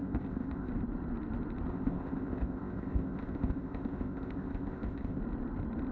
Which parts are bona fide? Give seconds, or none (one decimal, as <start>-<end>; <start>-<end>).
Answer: 0.7-1.7; 5.2-5.9